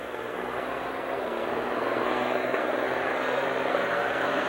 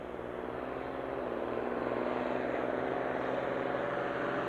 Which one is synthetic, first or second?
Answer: first